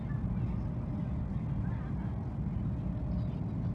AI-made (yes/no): no